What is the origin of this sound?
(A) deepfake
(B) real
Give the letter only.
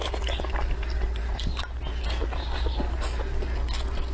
B